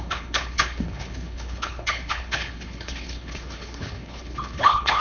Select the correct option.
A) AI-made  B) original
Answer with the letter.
A